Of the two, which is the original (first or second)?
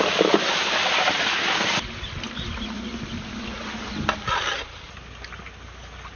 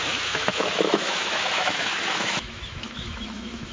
first